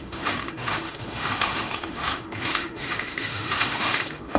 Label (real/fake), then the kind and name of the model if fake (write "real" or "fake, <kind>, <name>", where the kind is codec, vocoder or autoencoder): fake, autoencoder, DAC-VAE